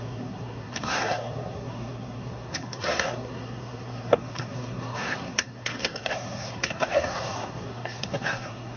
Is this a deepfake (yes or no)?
yes